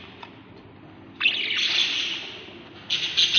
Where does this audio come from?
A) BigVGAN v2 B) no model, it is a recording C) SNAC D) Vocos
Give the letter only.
B